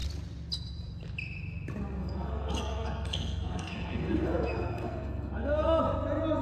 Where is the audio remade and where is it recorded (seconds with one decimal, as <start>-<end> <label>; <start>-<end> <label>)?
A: 0.0-2.0 recorded; 2.0-5.8 remade; 5.8-6.4 recorded